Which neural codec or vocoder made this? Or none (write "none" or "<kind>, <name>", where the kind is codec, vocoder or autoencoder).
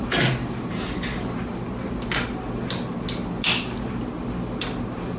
none